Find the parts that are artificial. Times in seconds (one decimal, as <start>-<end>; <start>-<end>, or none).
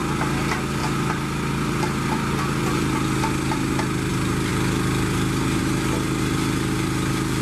none